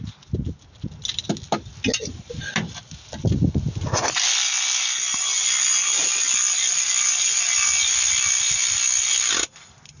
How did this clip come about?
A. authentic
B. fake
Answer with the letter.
A